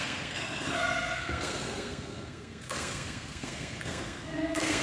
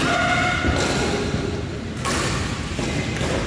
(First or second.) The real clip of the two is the second